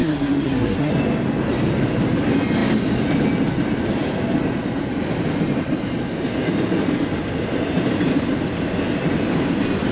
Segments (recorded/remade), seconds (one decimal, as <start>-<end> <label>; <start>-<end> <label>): 0.0-0.9 remade; 0.9-9.9 recorded